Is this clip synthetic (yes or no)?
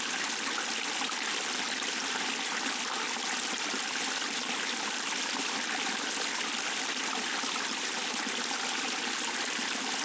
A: no